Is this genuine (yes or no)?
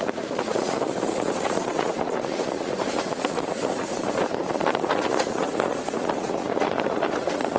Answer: no